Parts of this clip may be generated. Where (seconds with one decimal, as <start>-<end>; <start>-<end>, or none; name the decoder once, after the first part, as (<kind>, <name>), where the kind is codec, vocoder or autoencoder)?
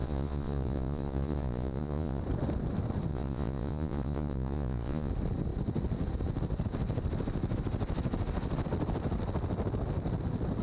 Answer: 0.0-2.2 (vocoder, Vocos); 3.1-5.1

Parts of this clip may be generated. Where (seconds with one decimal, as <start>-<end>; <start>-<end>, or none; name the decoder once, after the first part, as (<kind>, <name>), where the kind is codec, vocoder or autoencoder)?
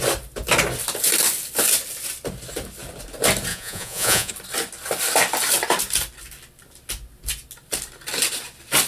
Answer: 3.5-4.3 (vocoder, Vocos)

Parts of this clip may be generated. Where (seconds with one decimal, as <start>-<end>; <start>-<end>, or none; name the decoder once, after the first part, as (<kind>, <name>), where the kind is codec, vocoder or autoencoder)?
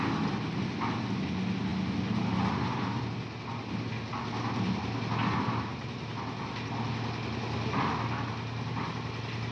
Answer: none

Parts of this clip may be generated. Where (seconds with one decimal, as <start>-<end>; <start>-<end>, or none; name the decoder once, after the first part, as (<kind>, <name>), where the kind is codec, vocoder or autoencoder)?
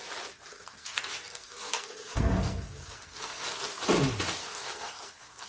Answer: 0.5-3.8 (codec, SNAC); 4.4-5.5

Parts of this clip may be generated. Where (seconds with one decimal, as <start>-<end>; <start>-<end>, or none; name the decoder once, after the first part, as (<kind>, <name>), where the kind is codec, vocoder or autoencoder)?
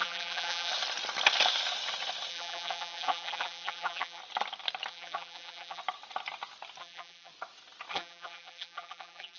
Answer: 0.0-0.7 (vocoder, BigVGAN v2); 2.3-4.2; 4.9-5.8; 6.8-7.3; 7.9-9.4